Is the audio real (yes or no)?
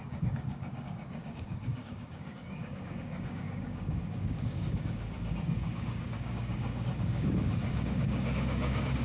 no